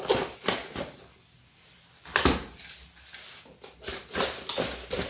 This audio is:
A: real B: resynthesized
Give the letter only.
A